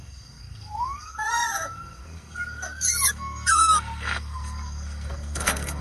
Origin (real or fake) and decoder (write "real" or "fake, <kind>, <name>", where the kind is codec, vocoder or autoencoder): fake, codec, SNAC